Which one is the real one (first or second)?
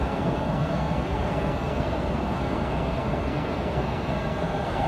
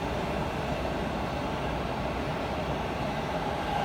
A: second